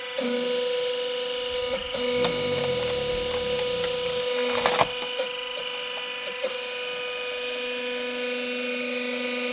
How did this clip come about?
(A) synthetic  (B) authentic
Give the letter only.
B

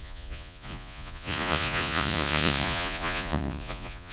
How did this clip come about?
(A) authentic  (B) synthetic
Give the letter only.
B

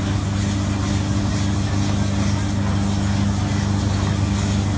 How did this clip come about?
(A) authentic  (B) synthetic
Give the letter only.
A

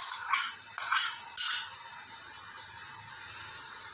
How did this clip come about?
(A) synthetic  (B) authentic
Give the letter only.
B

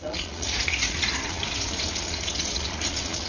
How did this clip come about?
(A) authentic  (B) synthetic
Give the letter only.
B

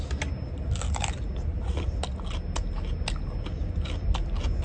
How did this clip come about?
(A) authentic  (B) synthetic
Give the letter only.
A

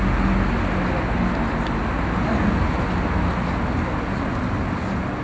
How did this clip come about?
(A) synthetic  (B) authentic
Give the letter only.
B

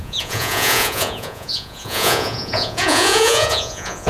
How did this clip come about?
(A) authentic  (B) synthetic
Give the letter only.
B